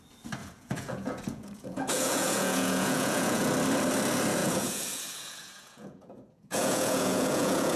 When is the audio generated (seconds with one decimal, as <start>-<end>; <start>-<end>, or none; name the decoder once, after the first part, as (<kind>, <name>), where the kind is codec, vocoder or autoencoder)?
0.4-3.5 (vocoder, Vocos); 4.4-7.8